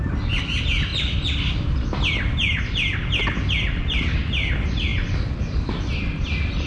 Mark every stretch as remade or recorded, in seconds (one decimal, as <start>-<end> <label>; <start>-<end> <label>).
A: 0.0-6.7 recorded

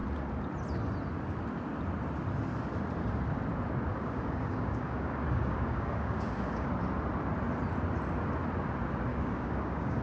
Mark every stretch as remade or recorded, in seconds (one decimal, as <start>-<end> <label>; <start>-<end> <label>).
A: 0.0-3.9 recorded; 3.9-6.7 remade; 6.7-9.1 recorded; 9.1-10.0 remade